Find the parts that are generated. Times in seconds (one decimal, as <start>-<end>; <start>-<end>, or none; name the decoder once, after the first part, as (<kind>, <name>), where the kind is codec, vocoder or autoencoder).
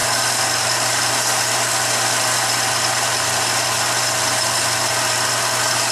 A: none